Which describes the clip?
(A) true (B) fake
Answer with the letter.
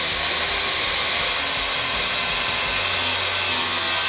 A